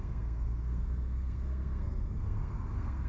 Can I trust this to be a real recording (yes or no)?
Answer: no